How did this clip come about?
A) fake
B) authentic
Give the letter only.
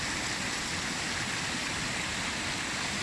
B